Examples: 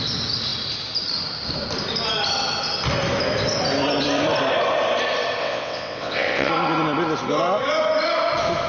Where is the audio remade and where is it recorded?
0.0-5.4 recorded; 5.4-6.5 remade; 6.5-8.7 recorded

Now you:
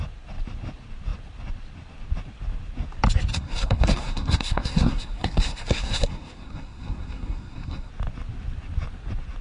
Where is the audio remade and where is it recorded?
0.0-3.3 recorded; 3.3-7.9 remade; 7.9-9.4 recorded

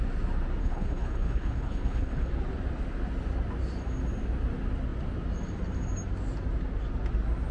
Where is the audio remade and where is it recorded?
0.0-0.6 recorded; 0.6-2.3 remade; 2.3-7.5 recorded

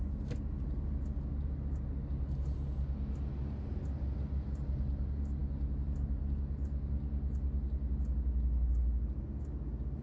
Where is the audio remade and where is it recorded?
0.0-10.0 recorded

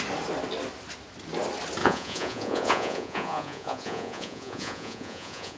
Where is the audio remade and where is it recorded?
0.0-1.8 recorded; 1.8-5.6 remade

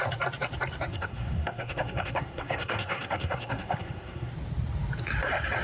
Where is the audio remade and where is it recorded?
0.0-0.9 recorded; 0.9-4.3 remade; 4.3-5.6 recorded

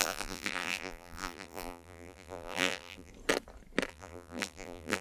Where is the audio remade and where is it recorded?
0.0-3.1 remade; 3.1-3.9 recorded; 3.9-5.0 remade